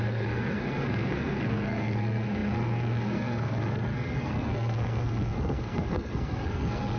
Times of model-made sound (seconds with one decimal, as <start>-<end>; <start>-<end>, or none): 0.0-7.0